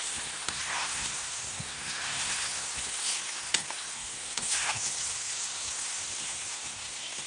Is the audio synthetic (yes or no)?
yes